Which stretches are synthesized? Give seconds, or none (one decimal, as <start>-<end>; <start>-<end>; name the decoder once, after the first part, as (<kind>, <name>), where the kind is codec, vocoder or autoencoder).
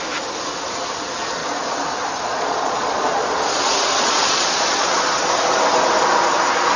1.4-5.3 (vocoder, Vocos)